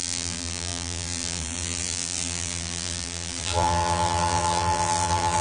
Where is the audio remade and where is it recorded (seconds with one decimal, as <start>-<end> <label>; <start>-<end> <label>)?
0.0-5.4 remade